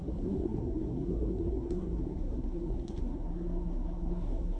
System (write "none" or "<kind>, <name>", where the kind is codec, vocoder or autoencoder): codec, SNAC